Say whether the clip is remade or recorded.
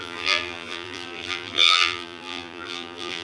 remade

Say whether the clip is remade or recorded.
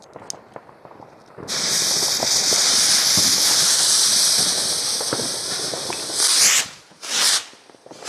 recorded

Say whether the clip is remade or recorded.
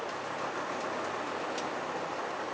recorded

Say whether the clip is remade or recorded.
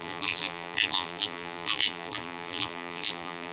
remade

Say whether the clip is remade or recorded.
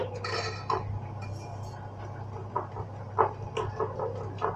recorded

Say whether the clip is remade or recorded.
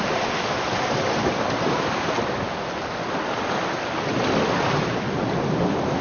recorded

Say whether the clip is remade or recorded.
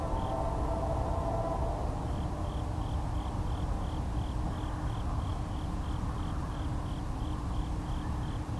recorded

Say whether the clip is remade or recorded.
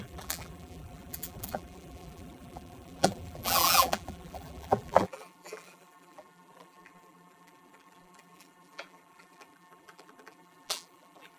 remade